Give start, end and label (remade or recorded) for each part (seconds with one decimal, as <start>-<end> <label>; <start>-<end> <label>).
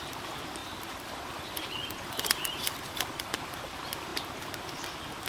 0.0-0.6 recorded; 0.6-3.4 remade; 3.4-5.3 recorded